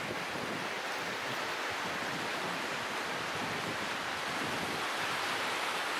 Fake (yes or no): no